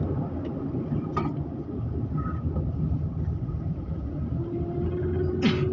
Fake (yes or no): no